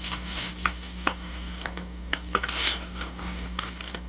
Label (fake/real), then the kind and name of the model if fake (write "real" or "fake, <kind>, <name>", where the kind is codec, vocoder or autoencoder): fake, codec, DAC